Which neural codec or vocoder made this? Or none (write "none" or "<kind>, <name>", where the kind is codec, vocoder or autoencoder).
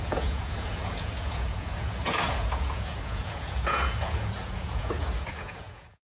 vocoder, Vocos